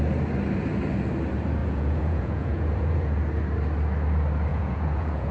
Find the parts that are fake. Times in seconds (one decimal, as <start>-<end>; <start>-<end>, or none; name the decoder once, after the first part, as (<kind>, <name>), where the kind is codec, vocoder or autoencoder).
1.6-3.2 (vocoder, Vocos); 4.5-5.3